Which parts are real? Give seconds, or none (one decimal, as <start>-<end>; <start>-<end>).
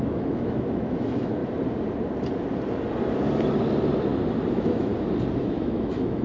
1.4-4.5; 4.9-5.4